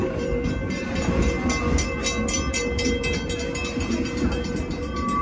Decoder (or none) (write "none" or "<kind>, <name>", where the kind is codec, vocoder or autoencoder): none